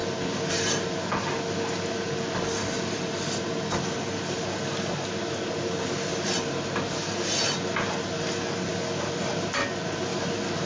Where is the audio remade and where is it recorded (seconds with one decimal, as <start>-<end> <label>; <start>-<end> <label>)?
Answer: 0.0-10.7 recorded